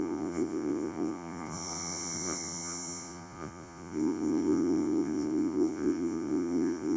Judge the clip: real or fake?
fake